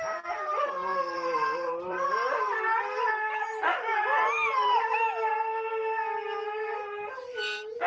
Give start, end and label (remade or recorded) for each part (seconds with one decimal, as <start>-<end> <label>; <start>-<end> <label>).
0.0-0.9 recorded; 0.9-2.6 remade; 2.6-7.9 recorded